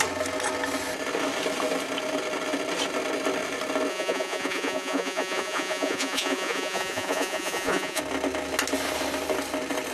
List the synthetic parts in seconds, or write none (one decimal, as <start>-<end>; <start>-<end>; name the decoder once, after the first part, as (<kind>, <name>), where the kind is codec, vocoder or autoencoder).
3.9-8.0 (vocoder, Vocos)